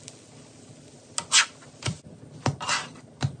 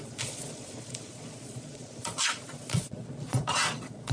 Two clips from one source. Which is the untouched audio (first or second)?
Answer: first